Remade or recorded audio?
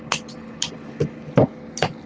recorded